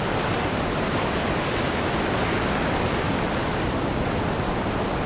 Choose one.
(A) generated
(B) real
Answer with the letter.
B